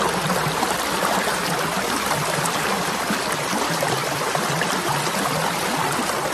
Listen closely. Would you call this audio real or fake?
fake